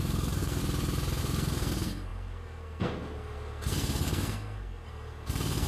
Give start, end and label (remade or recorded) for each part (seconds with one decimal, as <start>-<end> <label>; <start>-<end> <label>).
0.0-0.6 remade; 0.6-1.2 recorded; 1.2-5.7 remade